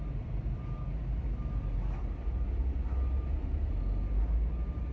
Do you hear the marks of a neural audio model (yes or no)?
no